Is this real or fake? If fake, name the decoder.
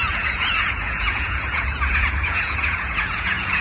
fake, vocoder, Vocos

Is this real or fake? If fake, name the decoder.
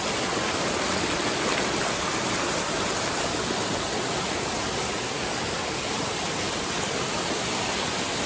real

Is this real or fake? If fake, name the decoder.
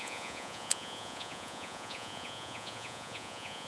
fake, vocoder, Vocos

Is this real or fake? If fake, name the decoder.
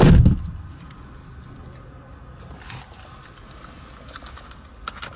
real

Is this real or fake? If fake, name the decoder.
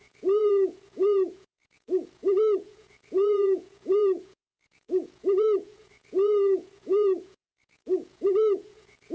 fake, vocoder, Vocos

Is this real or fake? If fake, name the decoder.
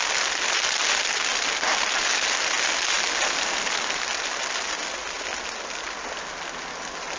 real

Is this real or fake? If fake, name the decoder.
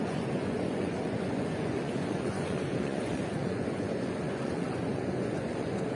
fake, vocoder, Vocos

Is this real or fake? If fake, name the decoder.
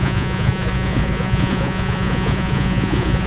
fake, vocoder, Vocos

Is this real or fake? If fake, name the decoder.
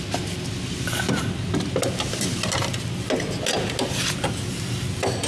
real